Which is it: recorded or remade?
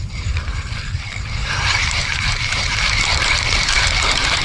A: remade